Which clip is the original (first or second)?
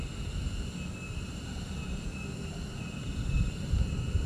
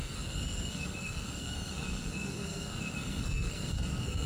first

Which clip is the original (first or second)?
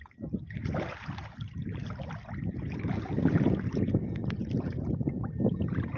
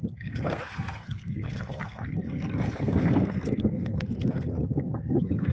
first